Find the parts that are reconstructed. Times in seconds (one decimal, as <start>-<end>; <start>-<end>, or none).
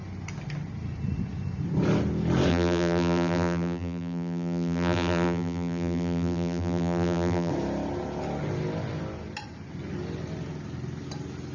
2.5-7.5